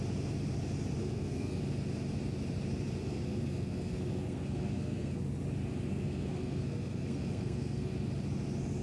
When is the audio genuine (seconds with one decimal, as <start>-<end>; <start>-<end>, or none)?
0.0-1.0; 1.6-3.0; 5.2-5.9; 7.9-8.8